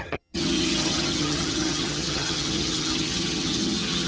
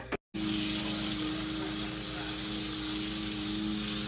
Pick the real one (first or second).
second